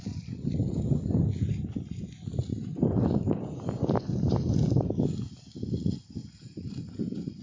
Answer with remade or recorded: recorded